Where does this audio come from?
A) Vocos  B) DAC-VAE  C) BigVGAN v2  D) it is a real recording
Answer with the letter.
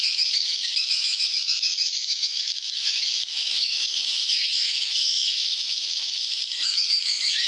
B